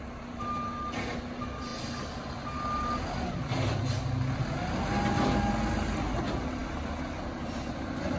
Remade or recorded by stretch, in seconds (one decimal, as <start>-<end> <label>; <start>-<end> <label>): 0.0-8.2 recorded